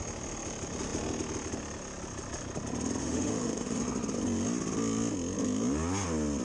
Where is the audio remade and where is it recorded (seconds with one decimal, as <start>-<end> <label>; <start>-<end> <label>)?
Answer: 0.0-3.0 recorded; 3.0-3.8 remade; 3.8-6.4 recorded

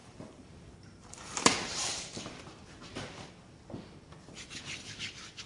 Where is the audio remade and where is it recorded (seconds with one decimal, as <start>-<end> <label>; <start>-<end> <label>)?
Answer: 0.0-3.3 remade; 3.3-5.5 recorded

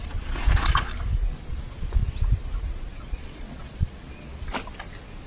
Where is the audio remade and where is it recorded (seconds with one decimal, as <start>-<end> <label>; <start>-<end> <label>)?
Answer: 0.0-0.9 remade; 0.9-1.5 recorded; 1.5-2.0 remade; 2.0-3.0 recorded; 3.0-4.5 remade; 4.5-5.3 recorded

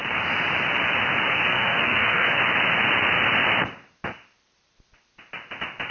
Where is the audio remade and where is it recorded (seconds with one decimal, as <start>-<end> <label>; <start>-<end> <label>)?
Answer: 0.0-1.3 recorded; 1.3-2.4 remade; 2.4-5.9 recorded

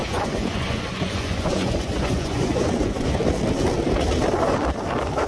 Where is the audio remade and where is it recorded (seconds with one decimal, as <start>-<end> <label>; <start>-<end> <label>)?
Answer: 0.0-3.2 remade; 3.2-5.3 recorded

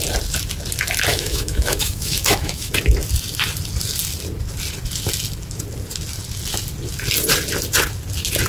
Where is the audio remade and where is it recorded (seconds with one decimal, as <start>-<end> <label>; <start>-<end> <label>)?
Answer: 0.0-1.1 recorded; 1.1-2.7 remade; 2.7-8.5 recorded

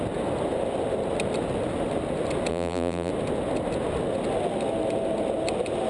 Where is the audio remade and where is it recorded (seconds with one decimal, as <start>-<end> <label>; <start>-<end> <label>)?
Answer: 0.0-2.5 recorded; 2.5-3.1 remade; 3.1-5.9 recorded